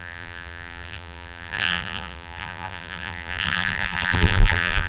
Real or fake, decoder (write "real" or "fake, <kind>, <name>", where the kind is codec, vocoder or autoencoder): fake, vocoder, BigVGAN v2